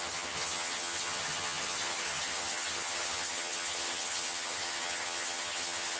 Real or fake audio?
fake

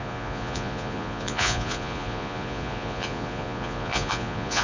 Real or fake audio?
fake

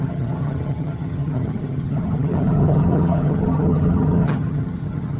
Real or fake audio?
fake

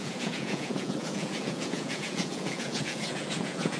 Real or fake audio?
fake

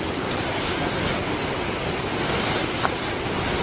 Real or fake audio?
real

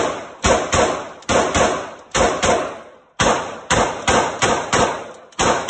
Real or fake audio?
real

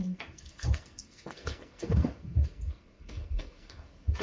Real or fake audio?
fake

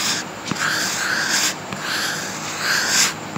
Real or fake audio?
real